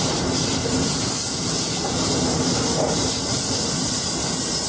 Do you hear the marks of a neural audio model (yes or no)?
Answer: no